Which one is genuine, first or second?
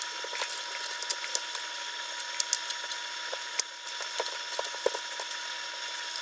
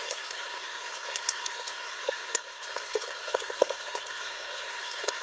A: first